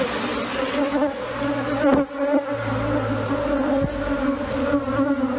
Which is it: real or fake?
real